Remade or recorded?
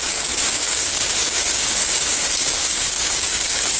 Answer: remade